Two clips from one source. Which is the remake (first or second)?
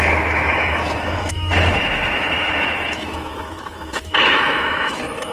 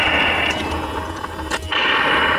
first